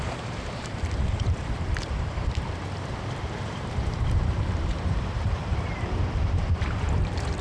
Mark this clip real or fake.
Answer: fake